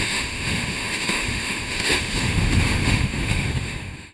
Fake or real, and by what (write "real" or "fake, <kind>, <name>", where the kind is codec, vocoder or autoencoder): fake, autoencoder, DAC-VAE